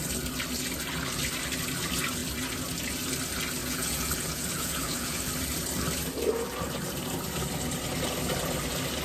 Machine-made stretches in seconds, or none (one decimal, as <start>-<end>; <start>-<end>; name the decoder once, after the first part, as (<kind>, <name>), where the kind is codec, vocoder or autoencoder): 3.6-5.3 (vocoder, Vocos)